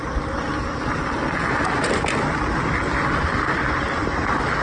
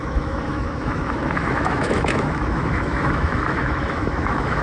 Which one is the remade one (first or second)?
second